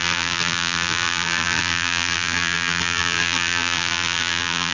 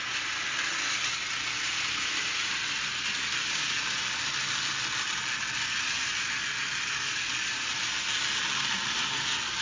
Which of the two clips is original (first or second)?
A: second